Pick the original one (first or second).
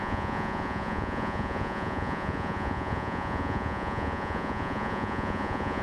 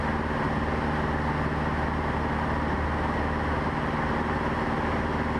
second